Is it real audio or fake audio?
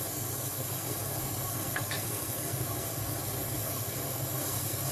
fake